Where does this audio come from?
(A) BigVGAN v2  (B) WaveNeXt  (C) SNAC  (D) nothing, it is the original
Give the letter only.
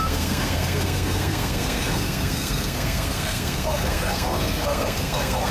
C